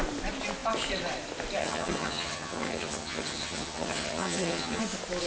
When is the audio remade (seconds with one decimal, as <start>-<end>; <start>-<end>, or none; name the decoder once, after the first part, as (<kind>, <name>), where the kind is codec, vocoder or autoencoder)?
1.6-4.8 (vocoder, HiFi-GAN)